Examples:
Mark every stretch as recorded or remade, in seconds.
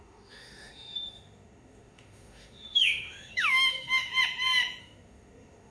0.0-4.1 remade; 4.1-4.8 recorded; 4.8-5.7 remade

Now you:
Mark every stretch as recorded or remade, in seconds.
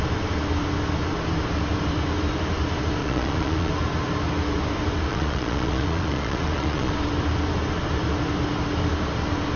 0.0-3.0 recorded; 3.0-3.7 remade; 3.7-5.1 recorded; 5.1-6.9 remade; 6.9-9.6 recorded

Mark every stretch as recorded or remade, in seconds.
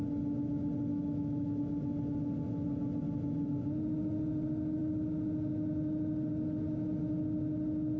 0.0-0.9 recorded; 0.9-1.6 remade; 1.6-8.0 recorded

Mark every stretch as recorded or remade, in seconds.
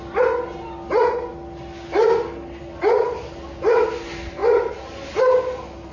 0.0-5.9 recorded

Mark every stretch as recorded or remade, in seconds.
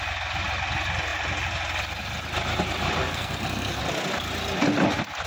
0.0-3.0 recorded; 3.0-3.8 remade; 3.8-5.3 recorded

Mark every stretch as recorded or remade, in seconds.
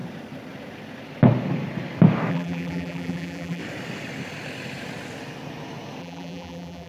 0.0-2.3 recorded; 2.3-3.6 remade; 3.6-6.0 recorded; 6.0-6.9 remade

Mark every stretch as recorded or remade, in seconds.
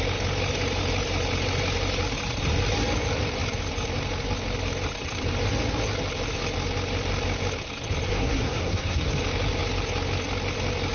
0.0-8.1 recorded; 8.1-9.1 remade; 9.1-10.9 recorded